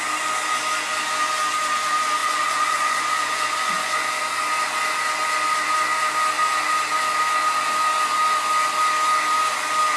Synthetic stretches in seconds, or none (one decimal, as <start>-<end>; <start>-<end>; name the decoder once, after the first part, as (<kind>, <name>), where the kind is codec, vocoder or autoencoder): 2.2-4.2 (vocoder, Vocos)